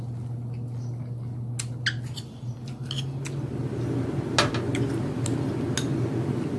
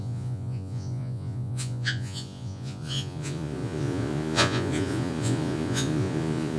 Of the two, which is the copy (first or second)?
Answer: second